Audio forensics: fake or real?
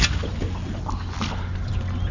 real